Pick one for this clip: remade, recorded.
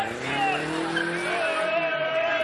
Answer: recorded